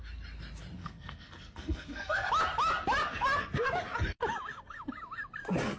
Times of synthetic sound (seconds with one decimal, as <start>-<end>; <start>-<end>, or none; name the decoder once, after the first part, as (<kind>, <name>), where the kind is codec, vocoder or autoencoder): 0.8-2.3 (codec, SNAC)